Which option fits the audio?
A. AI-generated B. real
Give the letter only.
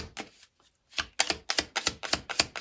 B